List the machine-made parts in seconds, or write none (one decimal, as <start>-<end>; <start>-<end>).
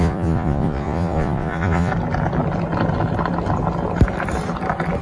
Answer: 0.0-1.9